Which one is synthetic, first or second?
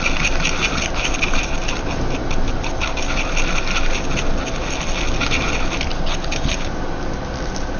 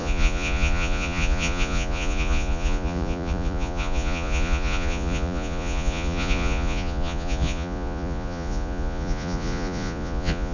second